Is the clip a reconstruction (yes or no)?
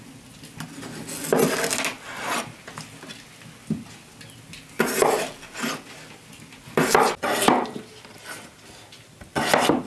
no